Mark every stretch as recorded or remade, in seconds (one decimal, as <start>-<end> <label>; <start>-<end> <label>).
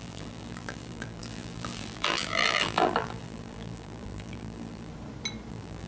0.0-4.9 remade; 4.9-5.5 recorded; 5.5-5.9 remade